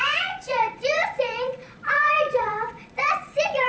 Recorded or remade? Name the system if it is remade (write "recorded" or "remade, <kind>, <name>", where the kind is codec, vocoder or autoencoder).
remade, vocoder, Vocos